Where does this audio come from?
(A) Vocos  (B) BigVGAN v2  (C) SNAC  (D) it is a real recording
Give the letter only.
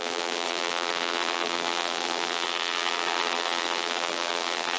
B